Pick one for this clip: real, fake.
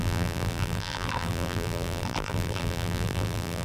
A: fake